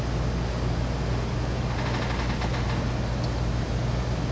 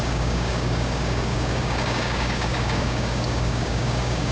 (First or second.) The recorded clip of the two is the first